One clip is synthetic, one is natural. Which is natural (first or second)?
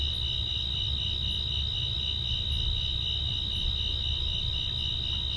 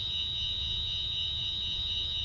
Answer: first